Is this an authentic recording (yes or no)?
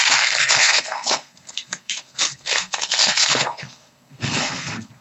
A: no